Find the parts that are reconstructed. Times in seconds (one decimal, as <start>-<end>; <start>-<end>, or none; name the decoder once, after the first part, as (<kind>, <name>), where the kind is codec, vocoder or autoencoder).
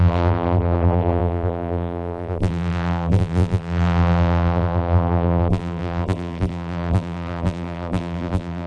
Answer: 0.0-8.7 (vocoder, BigVGAN v2)